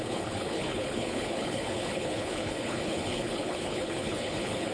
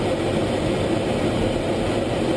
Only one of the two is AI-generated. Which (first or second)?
first